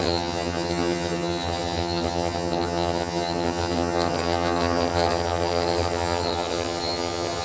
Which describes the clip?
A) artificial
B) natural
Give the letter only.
A